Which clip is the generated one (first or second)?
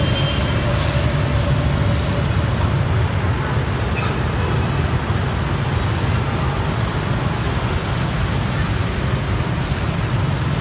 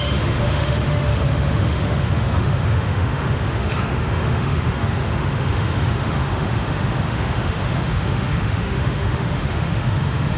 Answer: second